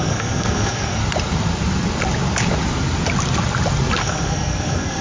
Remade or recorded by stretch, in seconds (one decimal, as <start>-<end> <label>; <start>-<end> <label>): 0.0-1.0 remade; 1.0-4.0 recorded; 4.0-5.0 remade